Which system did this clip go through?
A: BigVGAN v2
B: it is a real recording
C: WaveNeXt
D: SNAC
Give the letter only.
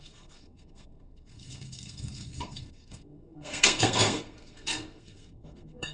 D